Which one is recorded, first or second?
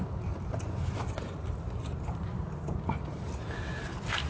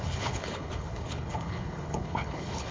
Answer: first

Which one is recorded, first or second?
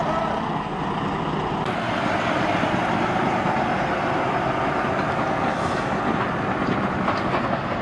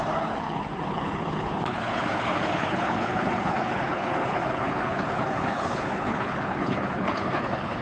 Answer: first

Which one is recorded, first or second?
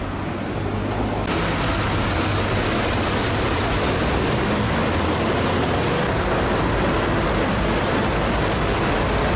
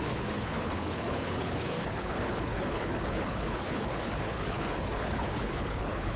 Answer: first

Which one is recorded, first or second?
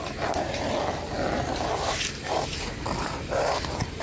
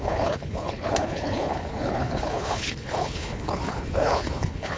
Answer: first